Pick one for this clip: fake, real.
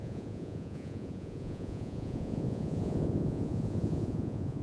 fake